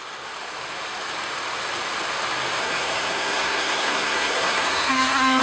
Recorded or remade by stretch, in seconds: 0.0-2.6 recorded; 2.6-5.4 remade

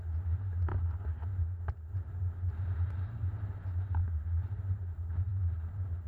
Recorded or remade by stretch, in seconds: 0.0-5.3 remade; 5.3-6.1 recorded

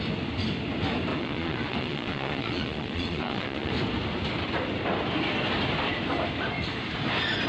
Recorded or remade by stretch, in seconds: 0.0-1.1 recorded; 1.1-3.7 remade; 3.7-7.5 recorded

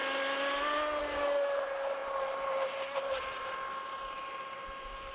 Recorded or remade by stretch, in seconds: 0.0-5.1 recorded

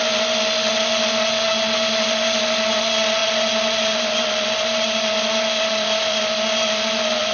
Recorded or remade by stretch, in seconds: 0.0-7.3 recorded

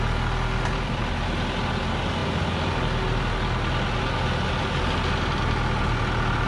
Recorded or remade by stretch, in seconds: 0.0-6.5 recorded

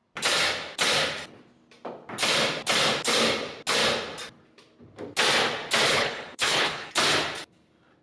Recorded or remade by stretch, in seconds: 0.0-5.9 recorded; 5.9-6.9 remade; 6.9-8.0 recorded